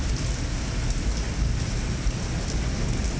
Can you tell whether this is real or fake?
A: real